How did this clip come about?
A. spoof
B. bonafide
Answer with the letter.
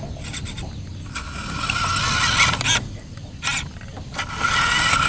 B